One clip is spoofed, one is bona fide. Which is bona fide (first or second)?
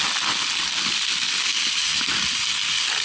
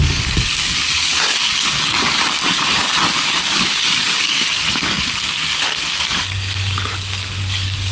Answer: first